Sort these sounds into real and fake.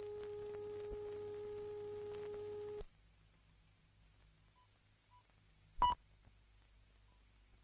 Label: real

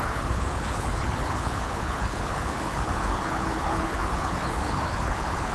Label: fake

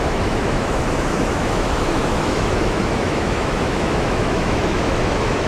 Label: fake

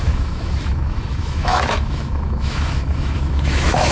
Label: fake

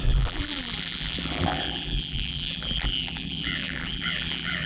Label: fake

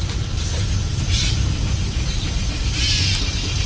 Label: real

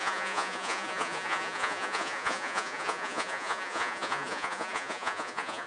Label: fake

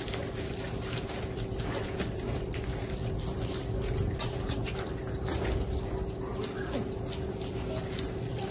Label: real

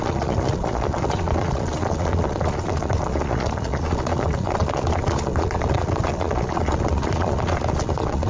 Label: fake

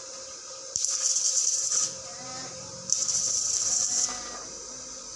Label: fake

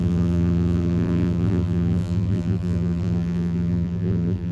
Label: fake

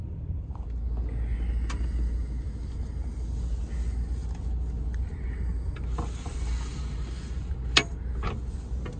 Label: real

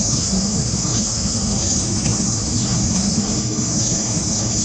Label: fake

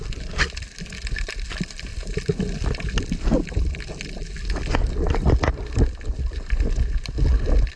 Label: real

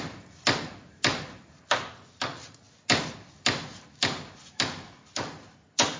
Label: real